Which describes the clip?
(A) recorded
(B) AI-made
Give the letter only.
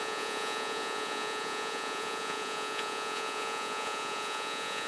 B